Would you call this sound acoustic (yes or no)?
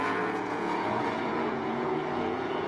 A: no